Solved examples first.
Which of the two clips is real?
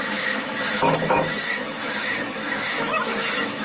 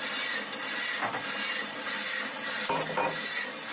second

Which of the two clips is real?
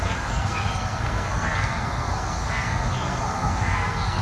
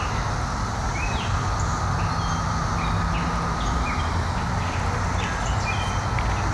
second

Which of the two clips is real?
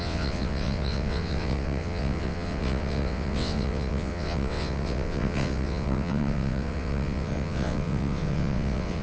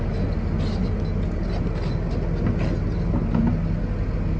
second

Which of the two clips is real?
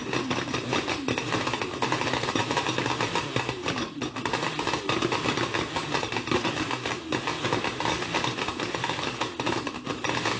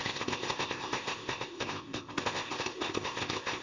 first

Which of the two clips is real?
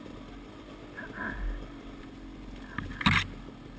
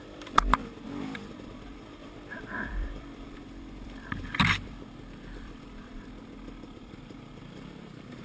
first